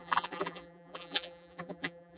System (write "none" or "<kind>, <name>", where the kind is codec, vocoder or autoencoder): vocoder, BigVGAN v2